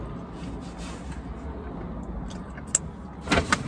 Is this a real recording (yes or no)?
yes